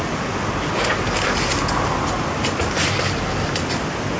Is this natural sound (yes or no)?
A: yes